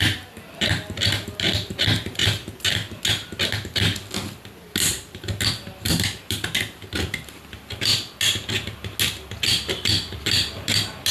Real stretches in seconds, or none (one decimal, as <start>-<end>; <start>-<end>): 0.0-11.1